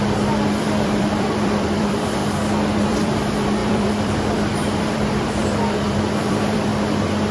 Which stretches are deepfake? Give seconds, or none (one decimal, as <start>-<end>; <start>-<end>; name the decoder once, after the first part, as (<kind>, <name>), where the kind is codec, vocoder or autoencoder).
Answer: 0.0-2.2 (vocoder, BigVGAN v2); 2.9-6.7